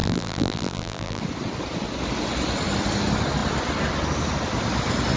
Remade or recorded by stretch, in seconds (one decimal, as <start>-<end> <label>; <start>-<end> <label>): 0.0-1.2 remade; 1.2-5.2 recorded